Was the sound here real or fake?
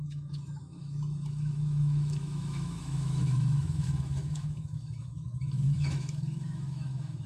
fake